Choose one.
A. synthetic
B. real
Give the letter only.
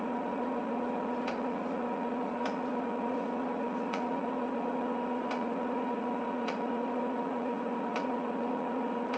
A